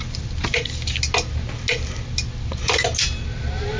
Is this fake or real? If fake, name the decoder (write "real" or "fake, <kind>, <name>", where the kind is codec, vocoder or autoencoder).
real